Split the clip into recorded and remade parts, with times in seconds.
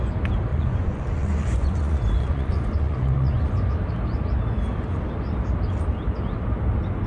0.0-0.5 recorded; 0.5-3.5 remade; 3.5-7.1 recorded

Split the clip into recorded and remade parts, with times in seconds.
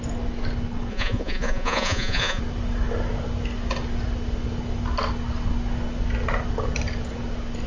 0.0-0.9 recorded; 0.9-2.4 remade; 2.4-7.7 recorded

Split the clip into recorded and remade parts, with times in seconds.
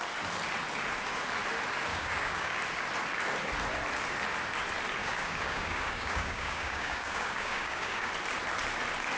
0.0-1.9 recorded; 1.9-2.6 remade; 2.6-5.0 recorded; 5.0-8.1 remade; 8.1-9.2 recorded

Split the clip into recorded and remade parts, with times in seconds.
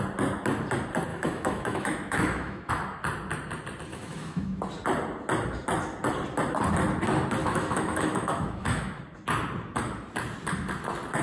0.0-1.1 recorded; 1.1-2.7 remade; 2.7-3.9 recorded; 3.9-4.6 remade; 4.6-7.4 recorded; 7.4-9.0 remade; 9.0-11.2 recorded